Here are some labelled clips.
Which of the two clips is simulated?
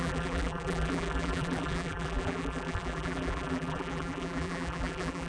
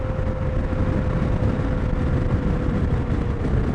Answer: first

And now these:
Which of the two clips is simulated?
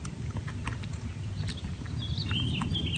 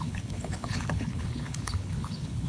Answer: second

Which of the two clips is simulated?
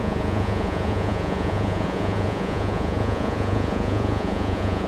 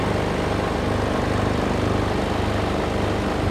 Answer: first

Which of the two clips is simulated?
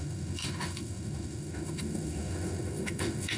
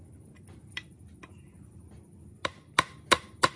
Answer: first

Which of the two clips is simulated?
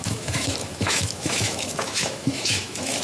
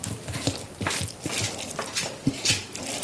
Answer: first